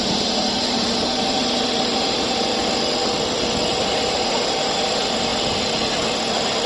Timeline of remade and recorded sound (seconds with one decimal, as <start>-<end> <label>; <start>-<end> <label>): 0.0-2.6 remade; 2.6-3.7 recorded; 3.7-5.3 remade; 5.3-6.7 recorded